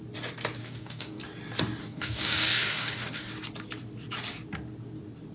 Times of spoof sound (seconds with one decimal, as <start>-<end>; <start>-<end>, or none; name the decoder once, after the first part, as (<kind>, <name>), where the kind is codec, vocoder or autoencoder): 0.6-1.2 (codec, DAC); 1.8-3.3